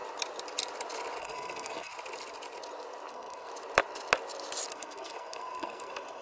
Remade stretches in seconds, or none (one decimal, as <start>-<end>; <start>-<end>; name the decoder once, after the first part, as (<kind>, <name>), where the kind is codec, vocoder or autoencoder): 1.2-1.9 (codec, SNAC); 3.1-3.5; 4.7-6.2